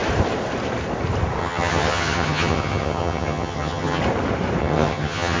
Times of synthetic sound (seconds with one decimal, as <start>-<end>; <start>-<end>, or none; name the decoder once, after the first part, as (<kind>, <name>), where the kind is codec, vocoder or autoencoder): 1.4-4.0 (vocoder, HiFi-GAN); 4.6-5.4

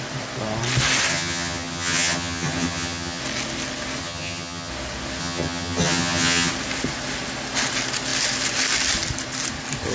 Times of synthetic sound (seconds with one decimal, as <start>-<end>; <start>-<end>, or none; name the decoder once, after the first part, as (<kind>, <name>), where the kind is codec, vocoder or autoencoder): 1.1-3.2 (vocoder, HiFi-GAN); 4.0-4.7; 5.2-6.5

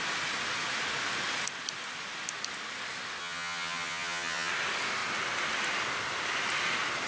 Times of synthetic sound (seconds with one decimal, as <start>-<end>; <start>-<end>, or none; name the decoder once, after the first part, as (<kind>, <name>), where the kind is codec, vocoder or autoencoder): 3.2-4.5 (vocoder, HiFi-GAN)

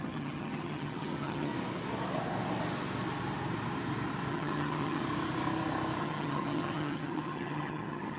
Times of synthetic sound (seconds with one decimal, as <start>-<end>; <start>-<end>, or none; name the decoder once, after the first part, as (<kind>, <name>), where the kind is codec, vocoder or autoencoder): 0.0-1.5 (vocoder, HiFi-GAN); 4.3-5.0; 6.0-8.2

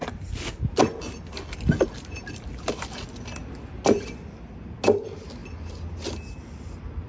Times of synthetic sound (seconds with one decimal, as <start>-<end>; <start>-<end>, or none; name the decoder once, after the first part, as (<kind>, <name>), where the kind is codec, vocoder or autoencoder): none

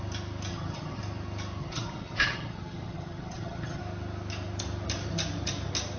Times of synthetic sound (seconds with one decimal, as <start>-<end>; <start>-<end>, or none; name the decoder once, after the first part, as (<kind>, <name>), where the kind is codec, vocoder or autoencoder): 0.5-1.0 (vocoder, HiFi-GAN); 1.6-3.8

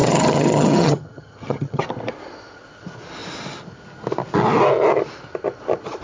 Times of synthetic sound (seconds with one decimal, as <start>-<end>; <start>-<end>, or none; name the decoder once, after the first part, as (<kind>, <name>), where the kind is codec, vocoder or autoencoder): 0.0-1.8 (vocoder, HiFi-GAN)